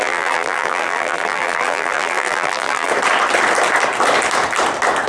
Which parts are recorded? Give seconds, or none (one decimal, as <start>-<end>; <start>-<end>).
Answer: 2.9-5.1